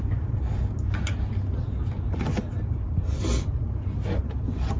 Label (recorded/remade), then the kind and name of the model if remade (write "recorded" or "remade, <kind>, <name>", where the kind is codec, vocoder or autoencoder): recorded